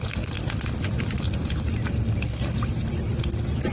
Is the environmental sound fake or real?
real